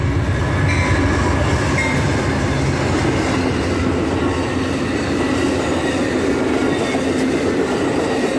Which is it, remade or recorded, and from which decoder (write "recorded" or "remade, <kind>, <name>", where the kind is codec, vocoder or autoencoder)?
recorded